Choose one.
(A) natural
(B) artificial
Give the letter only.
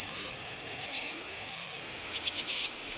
B